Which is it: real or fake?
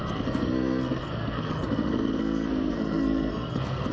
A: fake